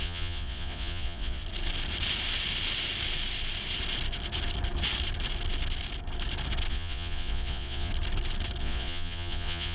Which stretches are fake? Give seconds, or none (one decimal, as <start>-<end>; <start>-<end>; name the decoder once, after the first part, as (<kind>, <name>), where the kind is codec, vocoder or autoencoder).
0.0-1.4 (vocoder, Vocos); 6.7-7.9; 8.6-9.7